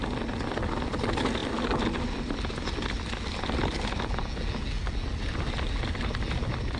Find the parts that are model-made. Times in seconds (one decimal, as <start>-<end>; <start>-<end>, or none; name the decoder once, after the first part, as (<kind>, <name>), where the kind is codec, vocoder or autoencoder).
none